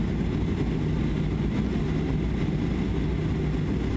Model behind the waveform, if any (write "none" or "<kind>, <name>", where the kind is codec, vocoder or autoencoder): none